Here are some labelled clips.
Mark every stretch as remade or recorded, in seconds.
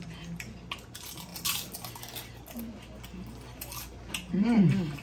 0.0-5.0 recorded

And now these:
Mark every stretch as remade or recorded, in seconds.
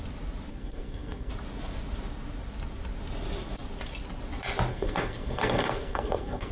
0.0-0.5 recorded; 0.5-1.3 remade; 1.3-4.7 recorded; 4.7-6.5 remade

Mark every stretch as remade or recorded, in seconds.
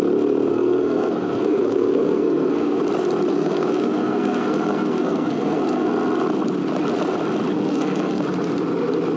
0.0-0.5 recorded; 0.5-2.8 remade; 2.8-3.3 recorded; 3.3-5.9 remade; 5.9-7.5 recorded; 7.5-8.2 remade; 8.2-9.2 recorded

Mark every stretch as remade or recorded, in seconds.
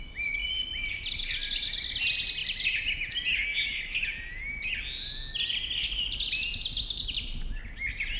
0.0-8.2 recorded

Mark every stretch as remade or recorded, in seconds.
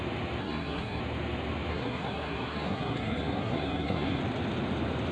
0.0-0.4 recorded; 0.4-1.0 remade; 1.0-1.7 recorded; 1.7-4.2 remade; 4.2-5.1 recorded